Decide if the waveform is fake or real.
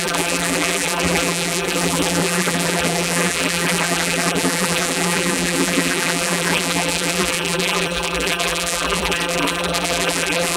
fake